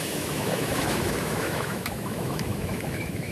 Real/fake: fake